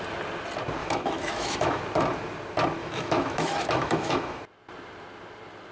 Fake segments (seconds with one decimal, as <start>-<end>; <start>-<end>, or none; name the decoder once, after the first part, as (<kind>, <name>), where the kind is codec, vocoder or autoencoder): 0.8-1.8 (autoencoder, DAC-VAE); 2.8-4.4